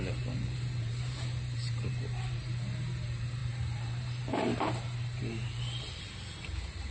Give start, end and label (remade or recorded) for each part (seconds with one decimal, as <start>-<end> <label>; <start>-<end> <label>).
0.0-6.9 remade